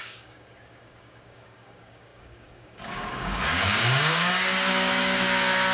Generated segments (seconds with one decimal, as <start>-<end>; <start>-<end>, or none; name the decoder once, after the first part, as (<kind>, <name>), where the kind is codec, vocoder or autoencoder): 0.0-5.7 (codec, DAC)